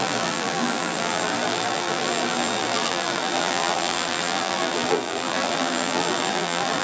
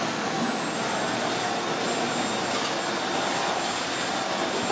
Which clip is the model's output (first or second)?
first